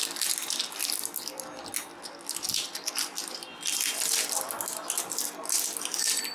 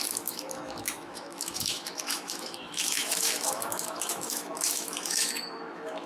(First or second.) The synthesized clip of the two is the second